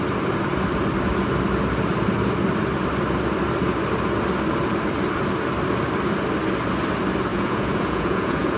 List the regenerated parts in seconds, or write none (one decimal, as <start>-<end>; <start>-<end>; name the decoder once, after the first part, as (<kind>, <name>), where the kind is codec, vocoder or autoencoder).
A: 7.3-8.6 (vocoder, Vocos)